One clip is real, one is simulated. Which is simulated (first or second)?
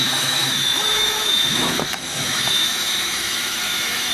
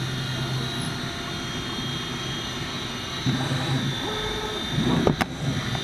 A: first